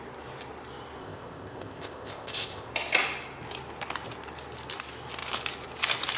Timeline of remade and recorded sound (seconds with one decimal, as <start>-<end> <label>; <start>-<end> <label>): 0.0-1.0 recorded; 1.0-2.7 remade; 2.7-6.2 recorded

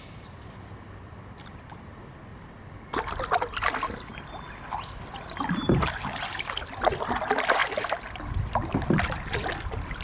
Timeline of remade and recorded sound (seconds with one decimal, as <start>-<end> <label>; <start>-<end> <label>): 0.0-2.3 recorded; 2.3-5.8 remade; 5.8-10.0 recorded

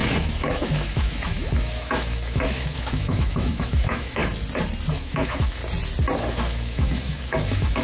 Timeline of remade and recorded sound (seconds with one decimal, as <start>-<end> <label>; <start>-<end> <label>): 0.0-4.2 remade; 4.2-4.9 recorded; 4.9-5.6 remade; 5.6-6.3 recorded; 6.3-7.8 remade

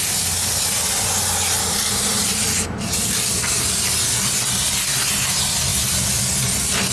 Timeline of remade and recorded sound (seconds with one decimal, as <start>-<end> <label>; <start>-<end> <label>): 0.0-6.9 recorded

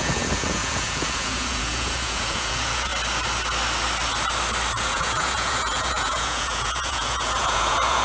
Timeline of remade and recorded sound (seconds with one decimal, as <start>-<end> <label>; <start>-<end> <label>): 0.0-2.9 remade; 2.9-4.8 recorded; 4.8-8.0 remade